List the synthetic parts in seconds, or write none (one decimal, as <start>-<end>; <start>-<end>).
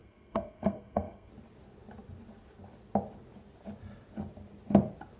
0.0-1.3